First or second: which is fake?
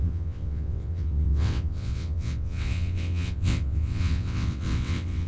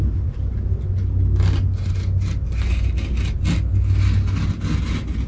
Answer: first